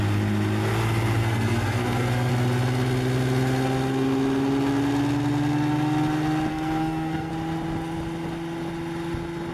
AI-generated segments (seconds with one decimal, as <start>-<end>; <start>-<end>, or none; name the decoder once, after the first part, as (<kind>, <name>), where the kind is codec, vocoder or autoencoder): 1.2-2.3 (codec, SNAC); 6.5-7.3